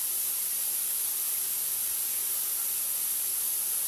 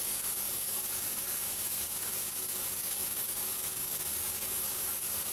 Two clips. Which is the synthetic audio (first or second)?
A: second